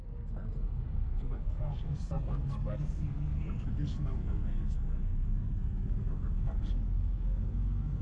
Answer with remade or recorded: remade